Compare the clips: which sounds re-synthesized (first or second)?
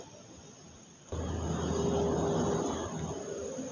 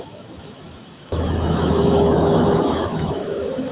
second